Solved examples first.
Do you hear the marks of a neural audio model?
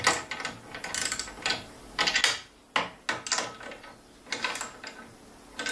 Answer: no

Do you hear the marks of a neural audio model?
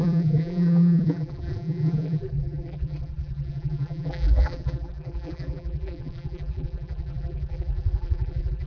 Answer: yes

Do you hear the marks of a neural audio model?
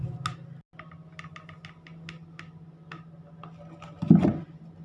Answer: no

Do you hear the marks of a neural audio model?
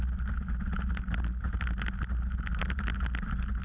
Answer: no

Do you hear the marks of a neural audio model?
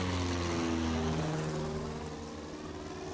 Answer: no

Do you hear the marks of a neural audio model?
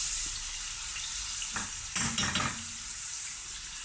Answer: no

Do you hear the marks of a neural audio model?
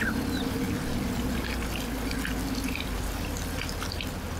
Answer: no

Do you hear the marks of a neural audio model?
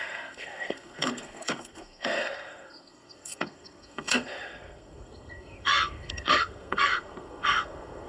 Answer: yes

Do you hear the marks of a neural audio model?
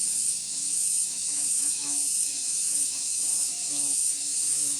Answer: yes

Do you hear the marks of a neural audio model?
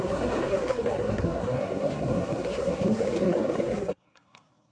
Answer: yes